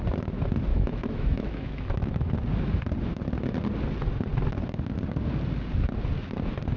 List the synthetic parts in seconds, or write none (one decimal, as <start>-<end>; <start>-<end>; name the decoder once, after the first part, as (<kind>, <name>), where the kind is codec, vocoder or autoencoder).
0.7-2.3 (autoencoder, DAC-VAE)